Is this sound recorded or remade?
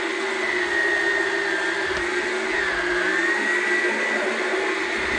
recorded